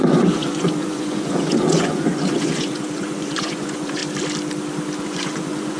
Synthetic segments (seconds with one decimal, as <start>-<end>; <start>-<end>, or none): 0.0-4.0; 5.0-5.8